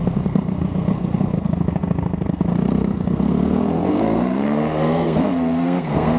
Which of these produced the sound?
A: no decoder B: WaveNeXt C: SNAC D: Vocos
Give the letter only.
C